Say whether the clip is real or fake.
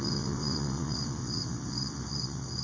fake